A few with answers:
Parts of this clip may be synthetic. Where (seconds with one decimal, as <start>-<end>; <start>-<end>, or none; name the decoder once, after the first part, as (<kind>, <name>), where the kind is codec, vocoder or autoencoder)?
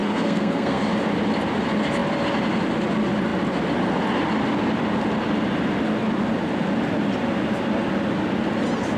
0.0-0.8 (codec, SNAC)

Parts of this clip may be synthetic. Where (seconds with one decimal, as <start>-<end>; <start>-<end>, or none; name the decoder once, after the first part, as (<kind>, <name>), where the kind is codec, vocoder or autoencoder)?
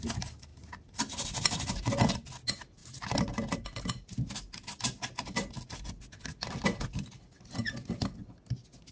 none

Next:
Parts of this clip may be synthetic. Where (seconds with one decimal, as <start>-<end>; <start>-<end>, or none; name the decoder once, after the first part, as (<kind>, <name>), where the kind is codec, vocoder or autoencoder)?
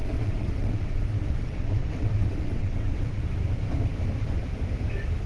0.0-3.2 (vocoder, WaveNeXt)